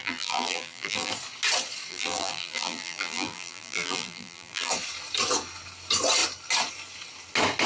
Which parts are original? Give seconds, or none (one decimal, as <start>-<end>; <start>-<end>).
1.1-1.9; 4.7-7.7